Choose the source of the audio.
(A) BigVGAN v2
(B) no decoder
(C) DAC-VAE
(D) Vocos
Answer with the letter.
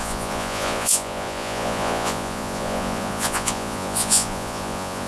D